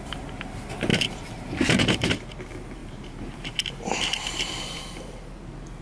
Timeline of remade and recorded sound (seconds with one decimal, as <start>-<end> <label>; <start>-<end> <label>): 0.0-0.9 recorded; 0.9-2.4 remade; 2.4-2.8 recorded; 2.8-4.8 remade; 4.8-5.8 recorded